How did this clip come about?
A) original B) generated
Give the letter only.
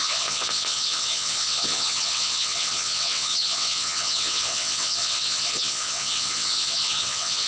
B